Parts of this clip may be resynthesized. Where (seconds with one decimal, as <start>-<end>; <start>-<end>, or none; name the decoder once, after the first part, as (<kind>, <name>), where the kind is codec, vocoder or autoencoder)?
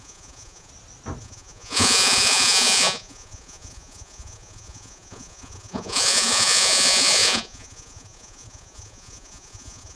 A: 0.0-0.7 (vocoder, Vocos); 1.2-10.0